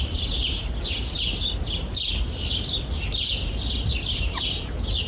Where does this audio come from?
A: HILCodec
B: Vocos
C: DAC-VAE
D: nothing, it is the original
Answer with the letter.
D